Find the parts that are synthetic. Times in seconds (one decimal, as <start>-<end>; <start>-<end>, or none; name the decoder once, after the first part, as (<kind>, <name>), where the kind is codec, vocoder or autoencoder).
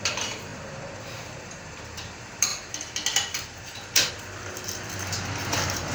none